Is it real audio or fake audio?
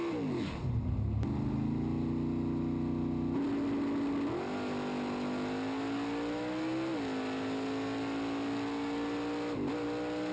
real